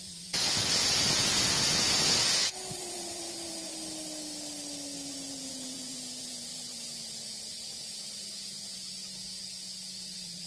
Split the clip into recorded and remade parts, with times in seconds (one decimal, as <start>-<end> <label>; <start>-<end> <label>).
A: 0.0-3.7 remade; 3.7-5.1 recorded; 5.1-10.5 remade